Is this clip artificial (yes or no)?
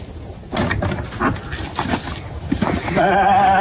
no